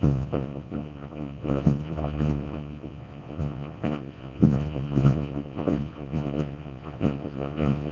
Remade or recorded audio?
remade